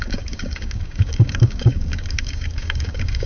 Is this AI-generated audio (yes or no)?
yes